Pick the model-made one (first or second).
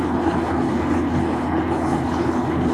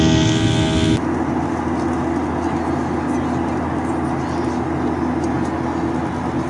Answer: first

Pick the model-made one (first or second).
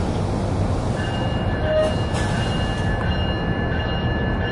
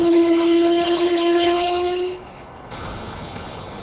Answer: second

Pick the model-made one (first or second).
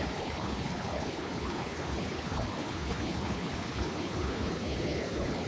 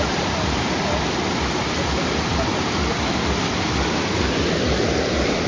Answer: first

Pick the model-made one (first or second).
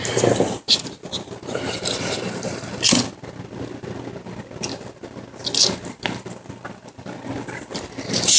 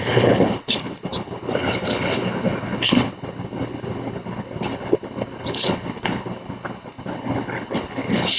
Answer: second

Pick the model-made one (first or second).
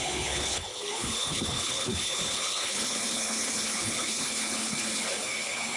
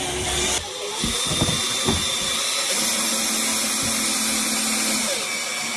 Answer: first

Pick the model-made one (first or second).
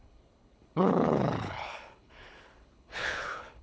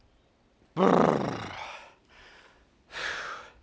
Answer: first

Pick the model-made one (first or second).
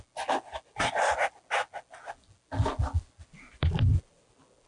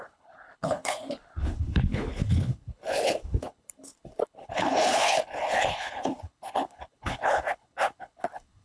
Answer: second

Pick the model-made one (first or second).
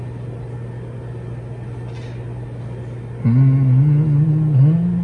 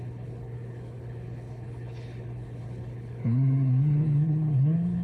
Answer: second